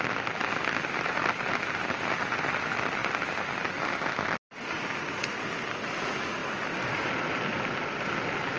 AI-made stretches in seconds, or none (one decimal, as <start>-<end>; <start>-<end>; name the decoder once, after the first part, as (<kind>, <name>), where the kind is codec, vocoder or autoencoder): none